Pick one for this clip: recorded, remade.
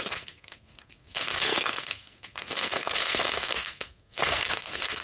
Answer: remade